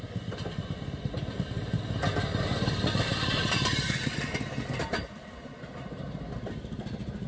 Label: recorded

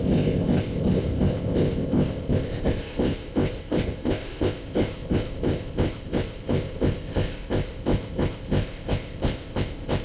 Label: remade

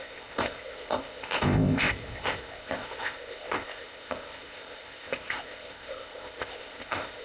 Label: remade